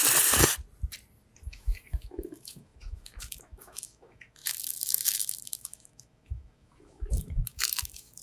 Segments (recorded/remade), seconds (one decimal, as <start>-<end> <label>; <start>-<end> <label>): 0.0-1.5 recorded; 1.5-8.2 remade